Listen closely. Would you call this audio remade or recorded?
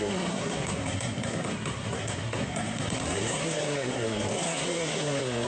remade